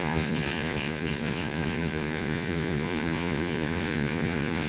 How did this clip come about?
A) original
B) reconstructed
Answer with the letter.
B